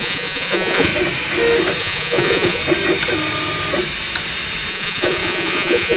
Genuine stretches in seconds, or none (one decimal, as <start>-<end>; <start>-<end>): 0.9-1.8; 2.6-4.7